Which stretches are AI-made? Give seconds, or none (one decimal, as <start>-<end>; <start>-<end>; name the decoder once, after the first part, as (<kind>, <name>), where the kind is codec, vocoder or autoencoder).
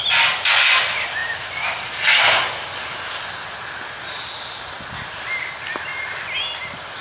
none